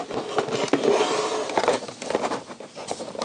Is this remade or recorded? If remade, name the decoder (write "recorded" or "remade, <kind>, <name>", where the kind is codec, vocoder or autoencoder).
recorded